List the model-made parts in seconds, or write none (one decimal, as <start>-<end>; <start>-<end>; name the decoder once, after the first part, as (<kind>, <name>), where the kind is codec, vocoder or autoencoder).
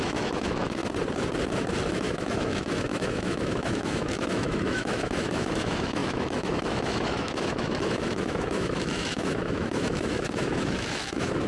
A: 0.0-0.8 (autoencoder, DAC-VAE); 1.9-11.5